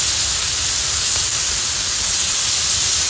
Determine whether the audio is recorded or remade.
recorded